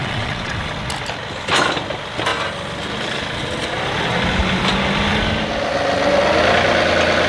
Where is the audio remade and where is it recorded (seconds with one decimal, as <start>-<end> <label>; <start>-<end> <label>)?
0.0-0.6 remade; 0.6-7.3 recorded